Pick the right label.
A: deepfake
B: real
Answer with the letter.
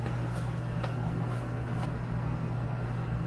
A